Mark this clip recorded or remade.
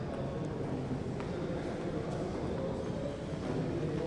recorded